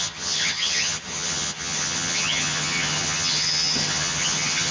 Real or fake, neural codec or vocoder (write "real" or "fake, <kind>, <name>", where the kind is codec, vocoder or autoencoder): fake, vocoder, HiFi-GAN